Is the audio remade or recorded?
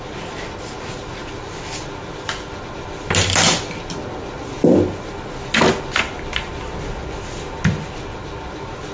recorded